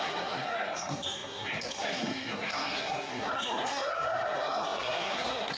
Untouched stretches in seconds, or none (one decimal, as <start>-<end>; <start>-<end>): none